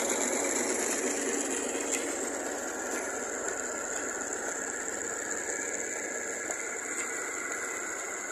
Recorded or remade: recorded